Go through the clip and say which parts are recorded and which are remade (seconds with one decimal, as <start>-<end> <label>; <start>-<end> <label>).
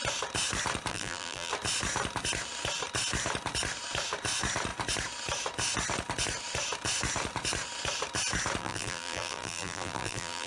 0.0-0.9 recorded; 0.9-1.5 remade; 1.5-8.6 recorded; 8.6-10.5 remade